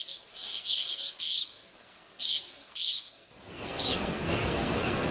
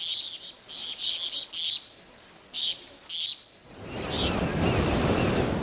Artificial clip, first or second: first